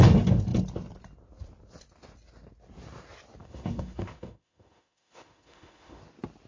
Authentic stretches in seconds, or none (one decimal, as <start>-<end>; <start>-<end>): 0.0-3.4; 6.0-6.5